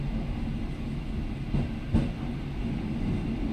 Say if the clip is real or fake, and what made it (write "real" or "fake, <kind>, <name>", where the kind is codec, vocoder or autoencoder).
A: real